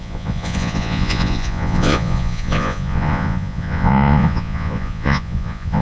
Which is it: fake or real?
fake